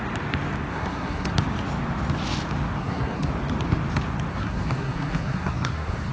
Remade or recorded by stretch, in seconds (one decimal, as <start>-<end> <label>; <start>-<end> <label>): 0.0-0.7 recorded; 0.7-1.3 remade; 1.3-2.8 recorded; 2.8-3.3 remade; 3.3-4.3 recorded; 4.3-6.1 remade